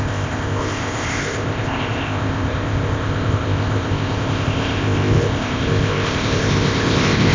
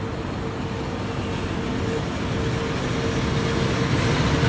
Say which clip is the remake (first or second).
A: first